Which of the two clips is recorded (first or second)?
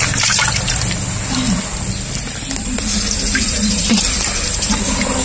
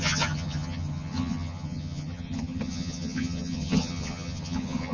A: first